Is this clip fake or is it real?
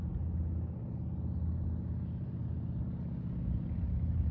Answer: real